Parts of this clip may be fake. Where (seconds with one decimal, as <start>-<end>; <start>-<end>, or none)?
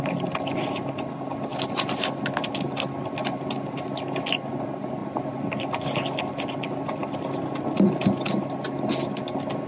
none